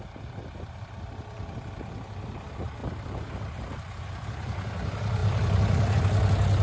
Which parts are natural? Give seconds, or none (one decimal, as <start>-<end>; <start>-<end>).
0.0-5.2; 6.0-6.6

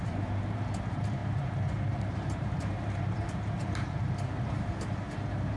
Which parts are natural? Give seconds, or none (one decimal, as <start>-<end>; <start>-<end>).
none

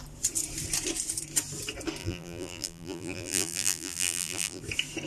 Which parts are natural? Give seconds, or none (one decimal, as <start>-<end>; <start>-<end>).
0.0-2.0; 4.6-5.1

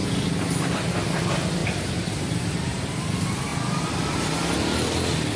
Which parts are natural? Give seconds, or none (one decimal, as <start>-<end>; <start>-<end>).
0.0-1.6; 3.0-5.4

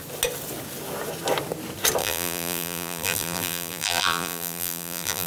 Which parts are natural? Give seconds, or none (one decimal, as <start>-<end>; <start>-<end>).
0.0-2.0

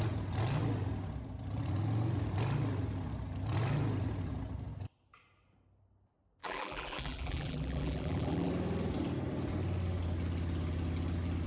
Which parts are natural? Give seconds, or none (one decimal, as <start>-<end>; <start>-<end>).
0.0-6.4; 8.5-11.5

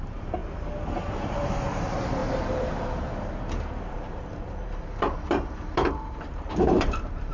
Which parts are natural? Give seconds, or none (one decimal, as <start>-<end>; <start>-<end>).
0.4-1.1

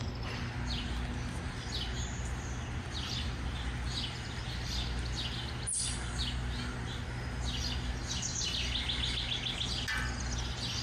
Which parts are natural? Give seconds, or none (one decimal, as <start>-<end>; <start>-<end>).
0.0-10.8